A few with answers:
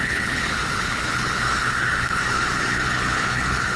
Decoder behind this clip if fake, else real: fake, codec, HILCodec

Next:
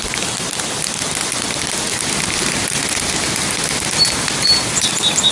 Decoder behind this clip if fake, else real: real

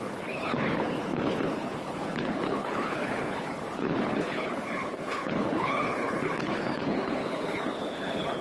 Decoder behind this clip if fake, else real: fake, codec, HILCodec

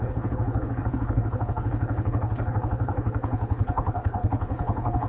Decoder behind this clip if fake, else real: fake, codec, HILCodec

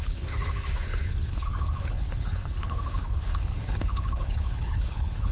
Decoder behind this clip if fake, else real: fake, codec, HILCodec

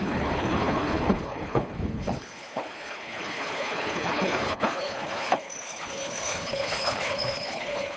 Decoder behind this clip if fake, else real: fake, codec, HILCodec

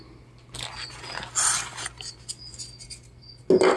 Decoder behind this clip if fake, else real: real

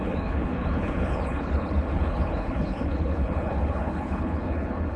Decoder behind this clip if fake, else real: fake, codec, HILCodec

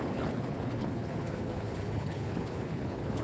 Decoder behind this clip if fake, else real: fake, codec, HILCodec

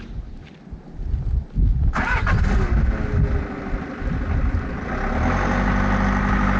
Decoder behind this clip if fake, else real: real